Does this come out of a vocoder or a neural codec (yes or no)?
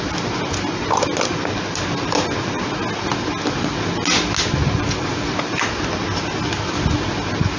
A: no